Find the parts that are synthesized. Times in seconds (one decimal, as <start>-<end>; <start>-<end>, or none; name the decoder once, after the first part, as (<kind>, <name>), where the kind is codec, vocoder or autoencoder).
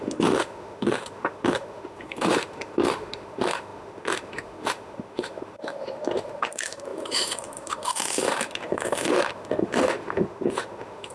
0.0-11.1 (autoencoder, DAC-VAE)